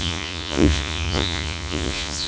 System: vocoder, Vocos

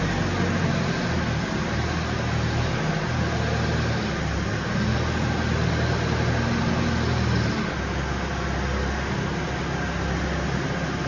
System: none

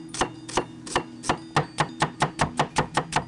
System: none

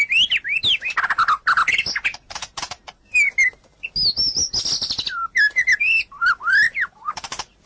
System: none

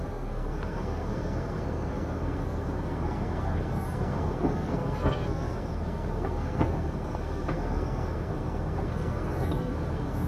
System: codec, SNAC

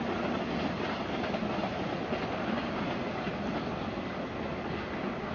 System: none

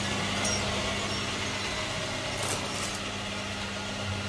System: none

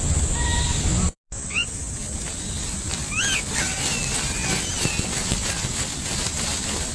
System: none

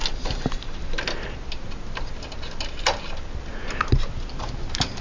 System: none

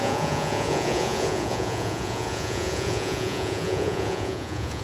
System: vocoder, Vocos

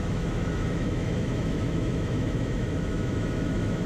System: autoencoder, DAC-VAE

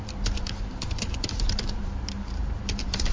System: vocoder, BigVGAN v2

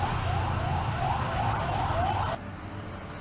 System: none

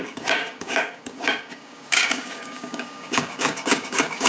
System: codec, DAC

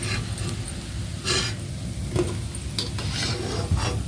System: none